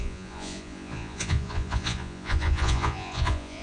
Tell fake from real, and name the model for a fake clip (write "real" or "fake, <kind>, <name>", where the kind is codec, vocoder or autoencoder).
fake, vocoder, Vocos